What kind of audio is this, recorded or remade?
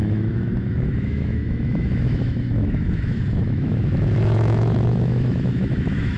remade